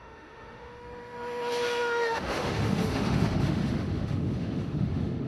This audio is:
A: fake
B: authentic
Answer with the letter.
A